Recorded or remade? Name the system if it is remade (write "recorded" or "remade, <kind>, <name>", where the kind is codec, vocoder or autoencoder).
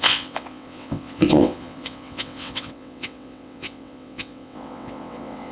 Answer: remade, vocoder, WaveNeXt